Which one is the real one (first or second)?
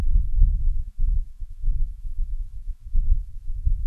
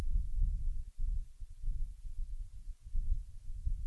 second